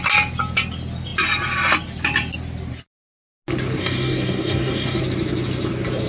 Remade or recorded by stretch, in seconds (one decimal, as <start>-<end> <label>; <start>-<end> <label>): 0.0-3.8 recorded; 3.8-5.0 remade; 5.0-6.1 recorded